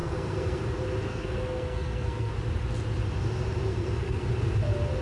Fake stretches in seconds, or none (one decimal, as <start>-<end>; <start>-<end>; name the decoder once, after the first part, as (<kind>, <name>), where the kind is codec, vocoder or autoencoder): 0.0-0.6 (codec, SNAC); 1.1-2.3; 3.7-4.3